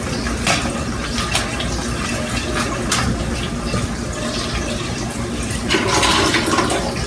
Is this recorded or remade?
recorded